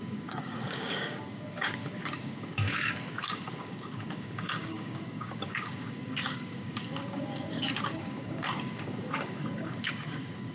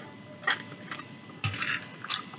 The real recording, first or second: second